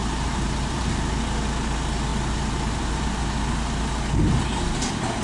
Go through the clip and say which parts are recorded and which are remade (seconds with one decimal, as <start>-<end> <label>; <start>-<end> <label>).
0.0-0.9 remade; 0.9-2.1 recorded; 2.1-3.2 remade; 3.2-5.2 recorded